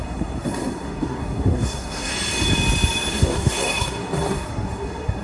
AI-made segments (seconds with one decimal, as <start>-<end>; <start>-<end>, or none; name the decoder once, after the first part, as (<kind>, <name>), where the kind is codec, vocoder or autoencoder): 0.0-2.1 (codec, SNAC); 3.1-5.2